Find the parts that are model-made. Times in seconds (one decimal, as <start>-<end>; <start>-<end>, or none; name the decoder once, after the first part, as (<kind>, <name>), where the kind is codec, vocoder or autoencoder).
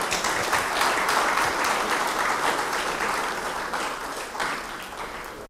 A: none